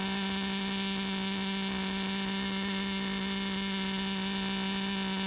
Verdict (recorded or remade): recorded